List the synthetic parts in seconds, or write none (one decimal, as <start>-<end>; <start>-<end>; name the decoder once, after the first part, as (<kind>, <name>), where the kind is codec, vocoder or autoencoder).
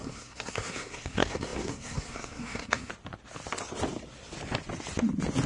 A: 0.0-2.9 (codec, SNAC)